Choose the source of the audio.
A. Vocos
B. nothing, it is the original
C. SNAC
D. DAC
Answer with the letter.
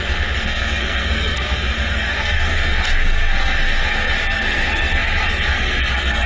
C